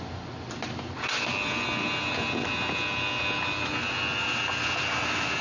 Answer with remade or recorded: recorded